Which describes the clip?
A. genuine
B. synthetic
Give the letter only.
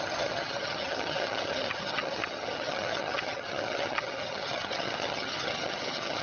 B